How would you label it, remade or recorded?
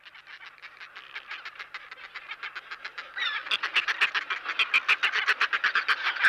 recorded